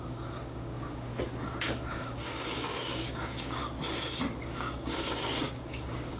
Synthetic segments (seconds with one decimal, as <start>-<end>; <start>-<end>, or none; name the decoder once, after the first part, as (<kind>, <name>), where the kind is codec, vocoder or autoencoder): 0.0-1.1 (codec, DAC); 1.6-3.6; 4.4-6.2